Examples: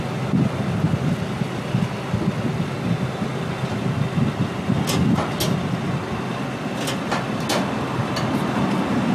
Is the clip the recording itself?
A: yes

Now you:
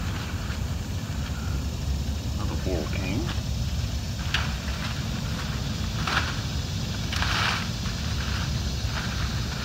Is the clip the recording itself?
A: yes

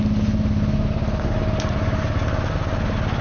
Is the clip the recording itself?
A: yes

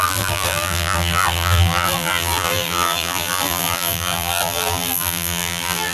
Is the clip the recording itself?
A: no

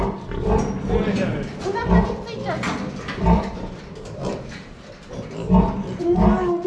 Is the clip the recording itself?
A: yes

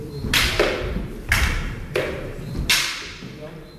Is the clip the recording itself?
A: yes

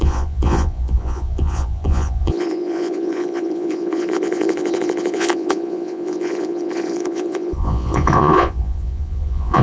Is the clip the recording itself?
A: no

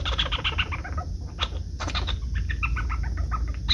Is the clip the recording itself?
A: yes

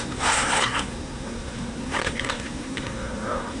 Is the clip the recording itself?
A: no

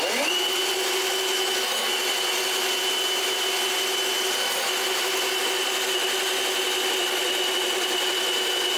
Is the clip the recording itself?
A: yes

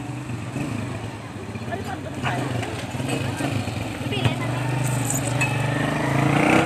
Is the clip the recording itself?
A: yes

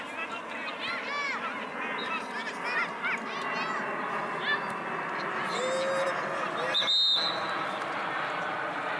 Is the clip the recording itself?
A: yes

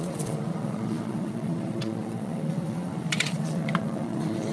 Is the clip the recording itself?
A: no